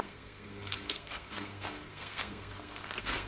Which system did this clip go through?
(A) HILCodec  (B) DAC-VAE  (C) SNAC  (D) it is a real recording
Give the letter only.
C